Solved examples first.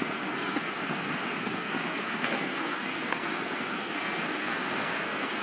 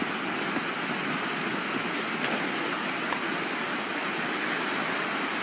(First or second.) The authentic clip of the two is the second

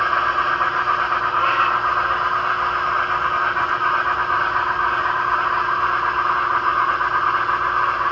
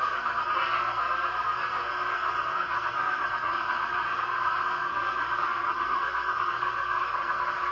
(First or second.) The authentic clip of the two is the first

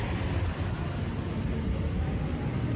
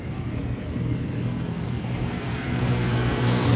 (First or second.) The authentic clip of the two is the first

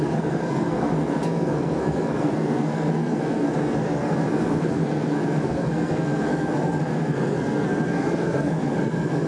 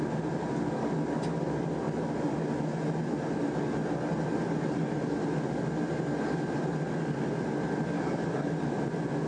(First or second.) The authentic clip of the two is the second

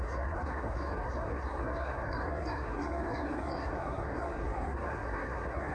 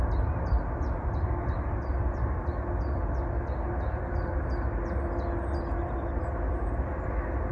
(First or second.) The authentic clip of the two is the second